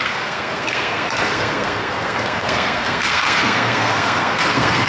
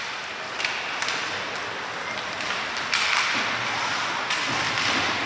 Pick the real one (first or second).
second